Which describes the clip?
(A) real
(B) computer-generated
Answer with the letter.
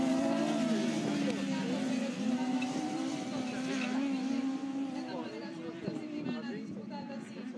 A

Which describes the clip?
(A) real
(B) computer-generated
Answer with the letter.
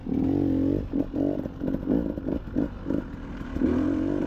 A